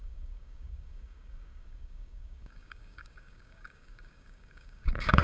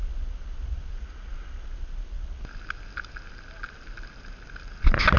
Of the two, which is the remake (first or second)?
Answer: first